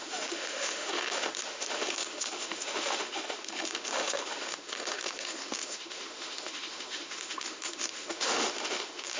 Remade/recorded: remade